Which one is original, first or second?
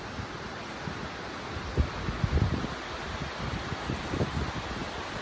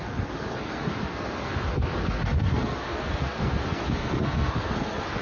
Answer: first